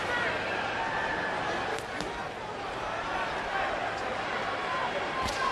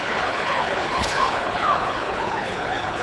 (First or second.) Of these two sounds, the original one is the first